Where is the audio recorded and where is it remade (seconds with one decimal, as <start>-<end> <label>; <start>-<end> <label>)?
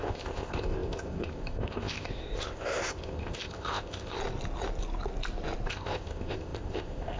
0.0-4.2 remade; 4.2-5.7 recorded; 5.7-7.2 remade